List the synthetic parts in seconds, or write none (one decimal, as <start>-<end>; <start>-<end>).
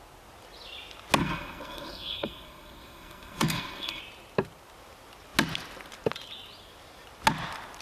1.2-4.0